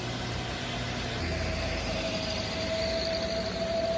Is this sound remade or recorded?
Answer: recorded